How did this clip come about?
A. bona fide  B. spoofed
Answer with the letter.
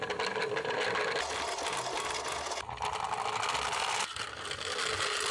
A